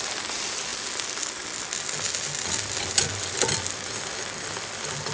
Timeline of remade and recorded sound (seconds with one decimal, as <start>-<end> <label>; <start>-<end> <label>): 0.0-5.1 recorded